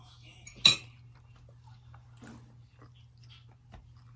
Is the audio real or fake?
real